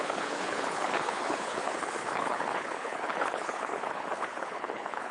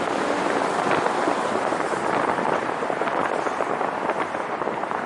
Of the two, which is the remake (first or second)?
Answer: first